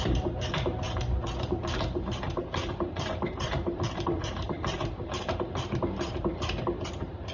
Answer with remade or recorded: remade